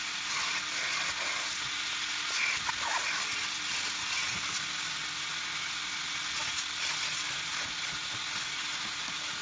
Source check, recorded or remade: recorded